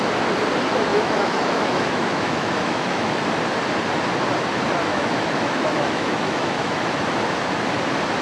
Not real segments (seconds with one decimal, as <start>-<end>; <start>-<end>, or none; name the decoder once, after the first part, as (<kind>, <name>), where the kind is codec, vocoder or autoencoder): 0.9-3.2 (autoencoder, DAC-VAE); 4.9-6.9